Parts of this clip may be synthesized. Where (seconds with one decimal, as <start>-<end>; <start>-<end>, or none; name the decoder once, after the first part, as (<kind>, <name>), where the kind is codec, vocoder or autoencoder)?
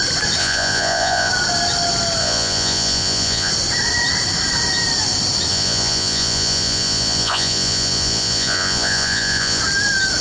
0.4-1.3 (vocoder, Vocos); 2.2-3.5; 5.5-9.6